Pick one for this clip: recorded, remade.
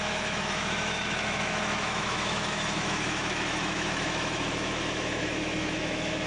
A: remade